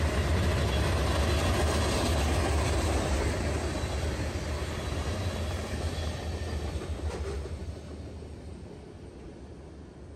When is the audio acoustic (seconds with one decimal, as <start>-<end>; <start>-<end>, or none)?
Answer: 0.0-10.2